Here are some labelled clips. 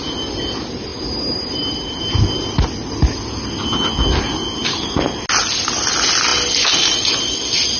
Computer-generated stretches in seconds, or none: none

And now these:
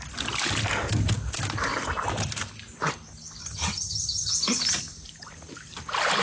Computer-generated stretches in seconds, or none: 3.4-4.3 (vocoder, HiFi-GAN)

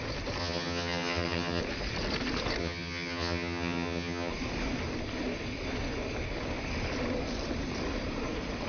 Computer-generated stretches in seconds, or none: 0.4-1.6 (vocoder, HiFi-GAN); 2.6-4.3

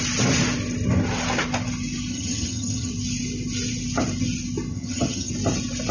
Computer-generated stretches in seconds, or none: 2.1-2.9 (vocoder, HiFi-GAN); 4.7-5.3

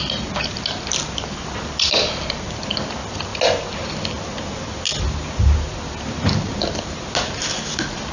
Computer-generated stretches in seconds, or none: none

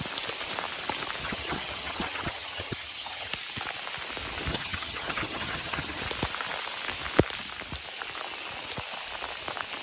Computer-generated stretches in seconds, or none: 1.2-3.3 (vocoder, HiFi-GAN); 4.5-6.0